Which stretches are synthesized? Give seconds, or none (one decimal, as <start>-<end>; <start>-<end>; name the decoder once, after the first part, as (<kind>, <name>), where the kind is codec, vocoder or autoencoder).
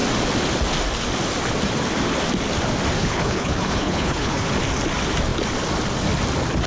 3.0-4.5 (codec, HILCodec)